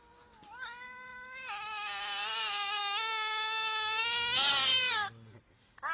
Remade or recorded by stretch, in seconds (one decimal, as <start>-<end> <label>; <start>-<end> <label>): 0.0-2.8 recorded; 2.8-4.5 remade; 4.5-5.9 recorded